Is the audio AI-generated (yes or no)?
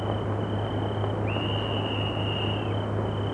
no